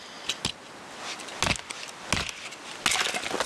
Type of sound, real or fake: real